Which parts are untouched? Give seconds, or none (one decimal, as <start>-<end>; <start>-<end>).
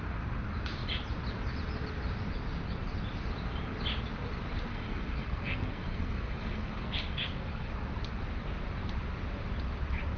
0.0-4.7; 7.7-10.2